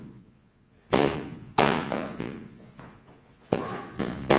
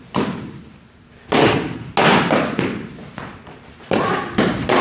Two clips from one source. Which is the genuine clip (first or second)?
second